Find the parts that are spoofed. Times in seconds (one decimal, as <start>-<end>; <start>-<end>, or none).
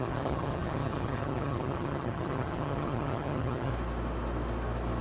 0.0-3.7